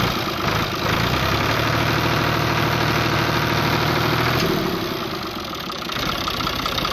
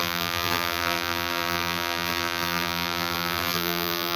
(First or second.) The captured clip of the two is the first